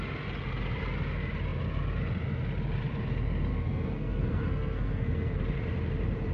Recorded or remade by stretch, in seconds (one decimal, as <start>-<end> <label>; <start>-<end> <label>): 0.0-3.5 recorded; 3.5-5.4 remade; 5.4-6.3 recorded